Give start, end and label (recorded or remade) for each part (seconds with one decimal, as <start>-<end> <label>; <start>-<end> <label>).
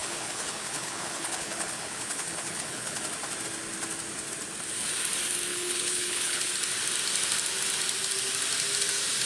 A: 0.0-3.0 remade; 3.0-5.5 recorded; 5.5-6.5 remade; 6.5-9.3 recorded